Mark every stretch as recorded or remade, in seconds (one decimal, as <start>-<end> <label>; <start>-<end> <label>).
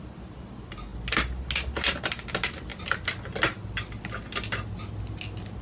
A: 0.0-5.6 recorded